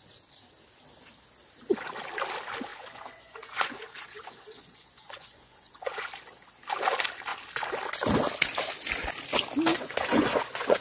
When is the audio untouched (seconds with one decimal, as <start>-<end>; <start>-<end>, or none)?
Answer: 0.0-2.7; 6.1-9.7